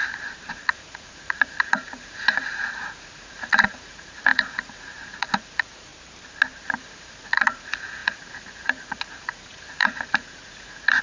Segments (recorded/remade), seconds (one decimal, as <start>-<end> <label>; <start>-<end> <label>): 0.0-0.5 recorded; 0.5-5.9 remade; 5.9-6.6 recorded; 6.6-11.0 remade